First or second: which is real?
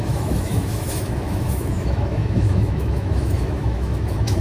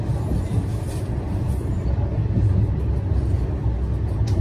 second